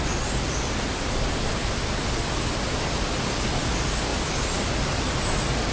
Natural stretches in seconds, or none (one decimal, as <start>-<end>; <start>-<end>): 0.0-5.7